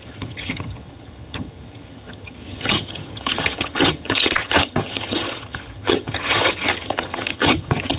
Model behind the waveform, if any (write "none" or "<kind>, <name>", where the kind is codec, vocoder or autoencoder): vocoder, HiFi-GAN